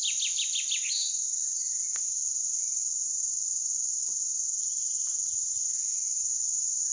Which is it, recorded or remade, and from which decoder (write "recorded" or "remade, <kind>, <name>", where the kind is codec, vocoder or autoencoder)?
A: recorded